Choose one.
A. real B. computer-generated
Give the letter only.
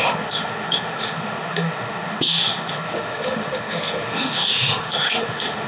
B